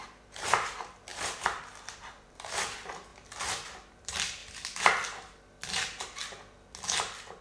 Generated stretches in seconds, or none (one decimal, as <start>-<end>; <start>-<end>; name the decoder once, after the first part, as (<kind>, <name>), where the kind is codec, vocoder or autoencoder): 0.0-3.1 (vocoder, BigVGAN v2); 3.9-4.4